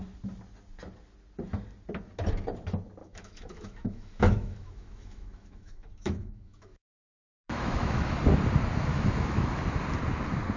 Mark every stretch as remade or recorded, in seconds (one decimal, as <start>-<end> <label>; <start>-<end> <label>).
0.0-3.0 recorded; 3.0-8.2 remade; 8.2-8.9 recorded; 8.9-9.6 remade; 9.6-10.6 recorded